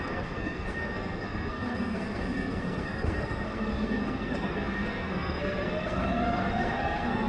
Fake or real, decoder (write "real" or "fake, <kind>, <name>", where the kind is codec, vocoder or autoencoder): fake, codec, SNAC